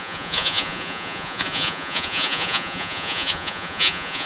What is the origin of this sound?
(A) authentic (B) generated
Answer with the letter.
B